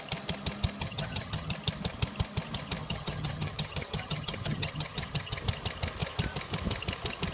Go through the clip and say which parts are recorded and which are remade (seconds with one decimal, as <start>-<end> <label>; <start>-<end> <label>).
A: 0.0-0.8 recorded; 0.8-1.5 remade; 1.5-2.8 recorded; 2.8-5.4 remade; 5.4-7.3 recorded